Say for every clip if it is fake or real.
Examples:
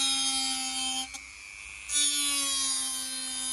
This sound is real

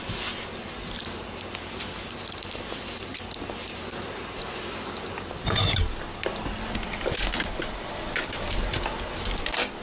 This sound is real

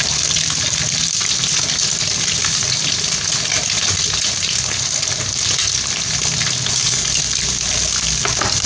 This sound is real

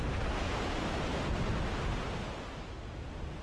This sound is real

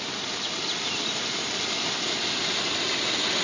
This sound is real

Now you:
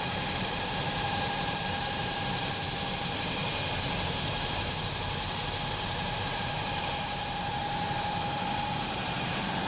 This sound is fake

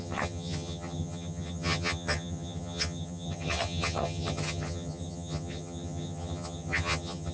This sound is fake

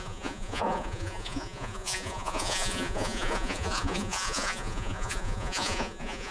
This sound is fake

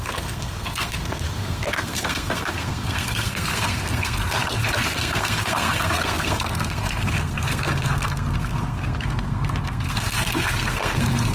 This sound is fake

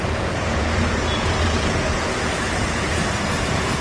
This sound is fake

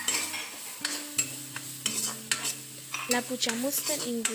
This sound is real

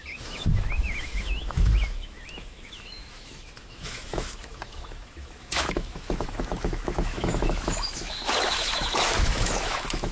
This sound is fake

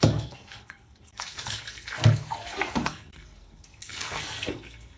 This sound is fake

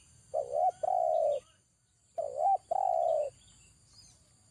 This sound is real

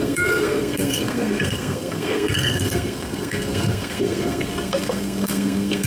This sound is fake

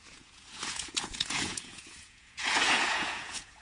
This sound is fake